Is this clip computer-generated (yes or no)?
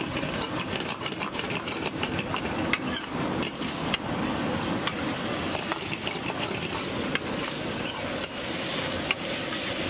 no